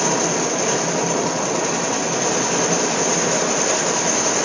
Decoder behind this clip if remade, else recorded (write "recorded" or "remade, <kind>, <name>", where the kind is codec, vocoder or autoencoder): recorded